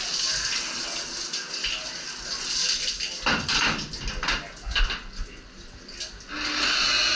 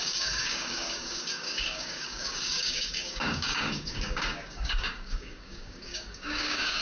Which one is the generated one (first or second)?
second